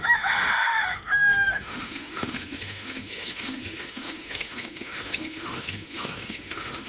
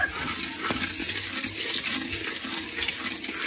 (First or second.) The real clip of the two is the second